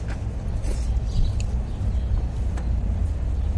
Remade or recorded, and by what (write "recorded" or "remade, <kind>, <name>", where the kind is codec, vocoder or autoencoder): recorded